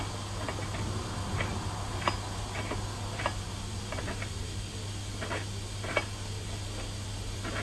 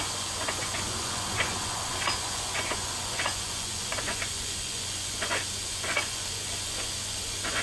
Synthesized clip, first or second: second